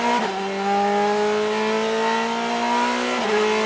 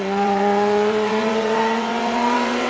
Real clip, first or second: first